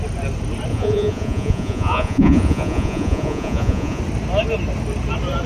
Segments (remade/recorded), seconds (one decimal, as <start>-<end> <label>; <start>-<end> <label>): 0.0-0.7 recorded; 0.7-4.0 remade; 4.0-5.5 recorded